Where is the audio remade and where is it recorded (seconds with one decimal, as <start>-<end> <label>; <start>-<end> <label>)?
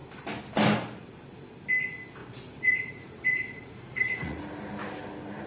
0.0-2.2 recorded; 2.2-4.4 remade; 4.4-5.5 recorded